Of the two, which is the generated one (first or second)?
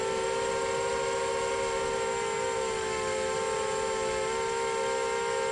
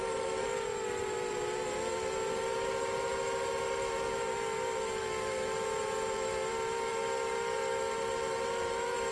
second